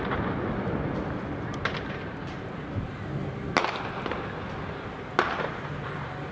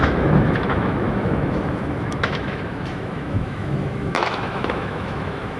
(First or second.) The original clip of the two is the first